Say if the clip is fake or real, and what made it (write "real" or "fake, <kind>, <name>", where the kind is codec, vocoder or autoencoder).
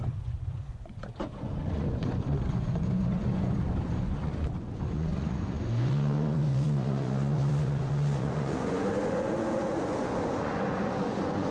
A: fake, vocoder, Vocos